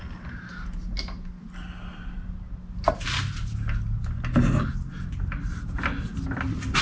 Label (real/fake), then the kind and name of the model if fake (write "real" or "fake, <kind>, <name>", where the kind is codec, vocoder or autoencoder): real